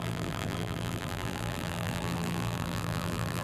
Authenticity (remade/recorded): remade